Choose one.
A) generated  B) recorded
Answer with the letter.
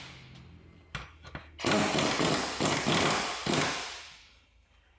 B